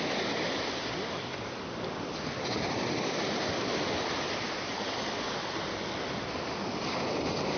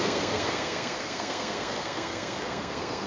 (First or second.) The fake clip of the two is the second